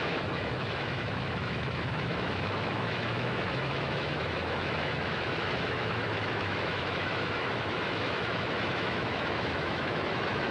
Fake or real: fake